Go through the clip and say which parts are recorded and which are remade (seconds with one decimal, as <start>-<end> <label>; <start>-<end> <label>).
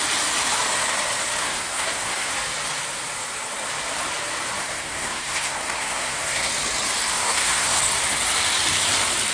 0.0-1.4 recorded; 1.4-2.3 remade; 2.3-4.6 recorded; 4.6-6.5 remade; 6.5-7.1 recorded; 7.1-7.8 remade; 7.8-9.3 recorded